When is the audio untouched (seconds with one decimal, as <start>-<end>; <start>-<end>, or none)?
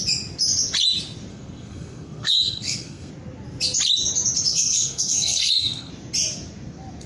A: 0.0-1.3; 3.1-4.5; 5.9-7.1